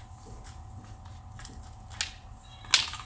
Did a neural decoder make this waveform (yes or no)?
no